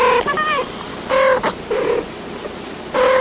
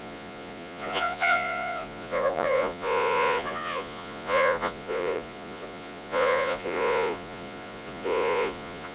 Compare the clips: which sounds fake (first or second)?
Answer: second